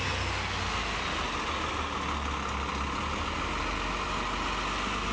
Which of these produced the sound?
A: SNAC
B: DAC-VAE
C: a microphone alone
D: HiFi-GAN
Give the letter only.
C